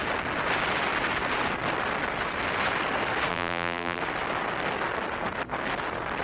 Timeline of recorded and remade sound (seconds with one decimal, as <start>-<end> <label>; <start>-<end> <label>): 0.0-3.3 recorded; 3.3-4.0 remade; 4.0-6.2 recorded